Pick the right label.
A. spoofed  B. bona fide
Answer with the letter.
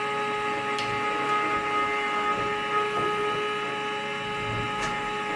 B